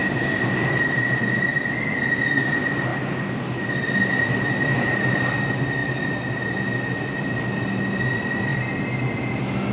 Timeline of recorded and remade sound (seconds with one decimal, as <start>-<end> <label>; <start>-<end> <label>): 0.0-9.7 recorded